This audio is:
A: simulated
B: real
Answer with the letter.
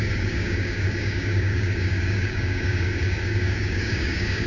A